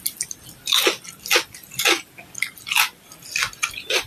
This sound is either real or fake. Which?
real